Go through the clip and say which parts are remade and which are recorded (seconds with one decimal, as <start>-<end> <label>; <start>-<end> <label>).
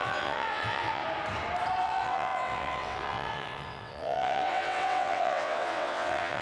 0.0-1.0 remade; 1.0-1.8 recorded; 1.8-6.4 remade